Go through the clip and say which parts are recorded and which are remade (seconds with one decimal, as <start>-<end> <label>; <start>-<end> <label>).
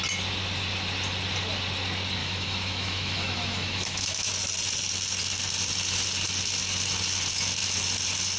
0.0-2.2 recorded; 2.2-4.3 remade; 4.3-8.4 recorded